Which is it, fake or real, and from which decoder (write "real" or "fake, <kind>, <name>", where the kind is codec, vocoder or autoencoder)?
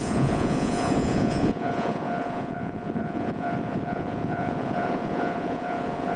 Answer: fake, vocoder, Vocos